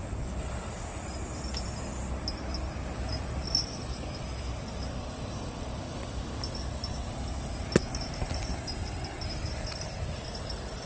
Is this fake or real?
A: real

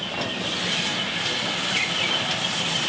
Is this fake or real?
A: real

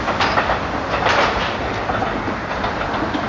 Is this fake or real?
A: real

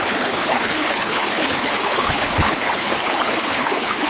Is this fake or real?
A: fake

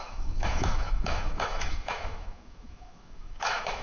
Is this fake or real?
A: fake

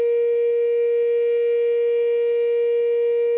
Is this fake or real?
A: real